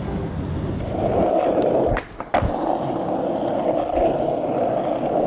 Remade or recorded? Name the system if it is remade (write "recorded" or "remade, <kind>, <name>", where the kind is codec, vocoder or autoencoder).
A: recorded